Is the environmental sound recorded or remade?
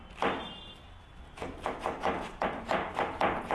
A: recorded